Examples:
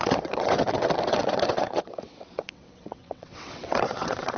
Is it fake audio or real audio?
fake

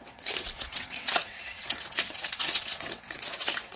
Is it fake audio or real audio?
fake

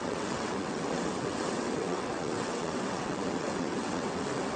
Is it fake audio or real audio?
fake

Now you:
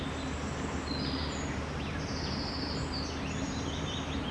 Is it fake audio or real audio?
real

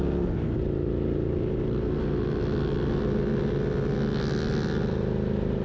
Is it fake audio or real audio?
real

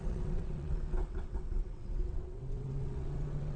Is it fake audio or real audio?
fake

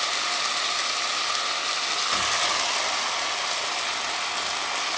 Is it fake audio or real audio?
real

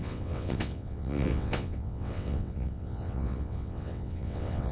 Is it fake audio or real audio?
fake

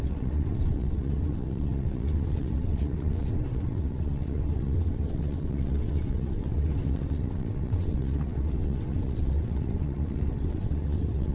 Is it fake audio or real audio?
fake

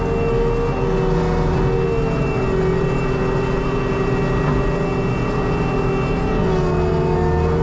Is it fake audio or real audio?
real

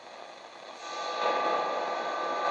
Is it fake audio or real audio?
real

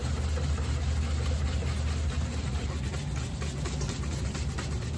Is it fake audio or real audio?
real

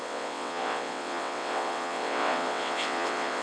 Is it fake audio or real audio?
fake